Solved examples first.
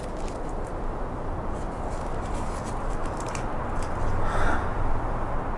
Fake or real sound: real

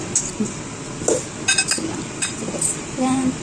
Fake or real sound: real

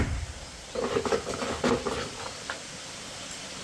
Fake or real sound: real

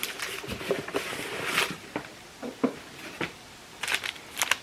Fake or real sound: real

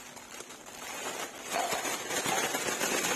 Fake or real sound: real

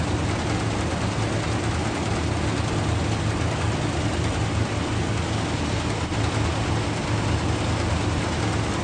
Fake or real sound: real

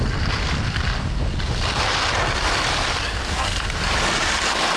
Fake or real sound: real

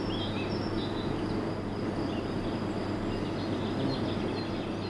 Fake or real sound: real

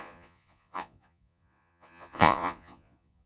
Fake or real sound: fake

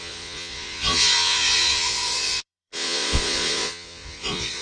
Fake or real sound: fake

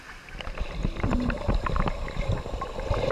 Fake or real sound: real